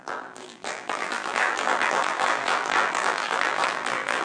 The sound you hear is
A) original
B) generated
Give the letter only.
B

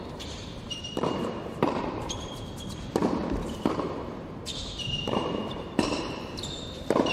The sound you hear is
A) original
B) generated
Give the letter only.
B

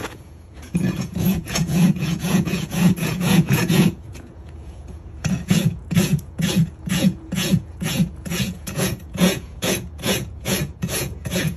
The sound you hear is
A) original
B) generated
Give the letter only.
B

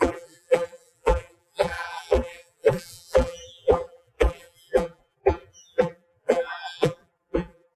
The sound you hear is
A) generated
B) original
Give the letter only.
A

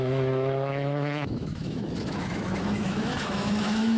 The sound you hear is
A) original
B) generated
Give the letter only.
B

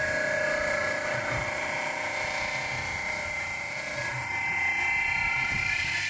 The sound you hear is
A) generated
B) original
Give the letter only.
A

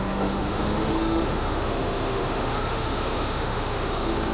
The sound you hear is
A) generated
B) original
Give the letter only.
A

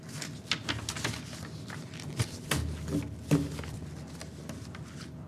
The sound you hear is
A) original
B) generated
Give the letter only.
A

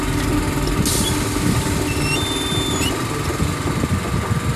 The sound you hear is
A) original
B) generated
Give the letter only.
A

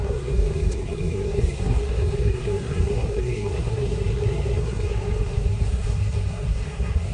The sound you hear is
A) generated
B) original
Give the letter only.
A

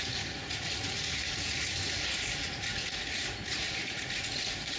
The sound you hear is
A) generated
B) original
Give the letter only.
A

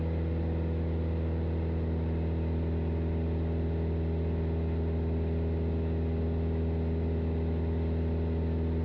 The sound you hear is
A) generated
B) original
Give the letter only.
B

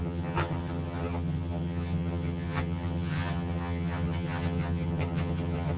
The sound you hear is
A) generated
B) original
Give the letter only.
A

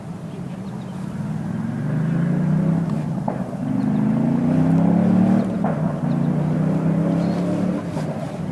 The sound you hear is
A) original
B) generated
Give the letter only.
A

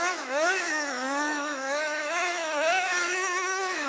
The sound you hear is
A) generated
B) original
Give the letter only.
A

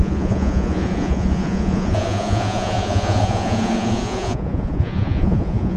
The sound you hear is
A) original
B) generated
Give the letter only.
B